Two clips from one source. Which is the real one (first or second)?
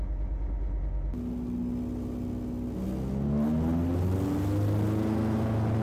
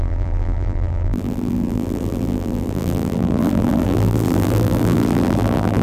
first